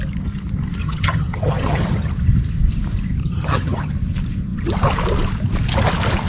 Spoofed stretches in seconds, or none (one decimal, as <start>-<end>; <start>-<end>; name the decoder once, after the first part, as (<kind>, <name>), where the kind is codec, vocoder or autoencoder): 0.8-2.1 (vocoder, HiFi-GAN); 3.2-3.9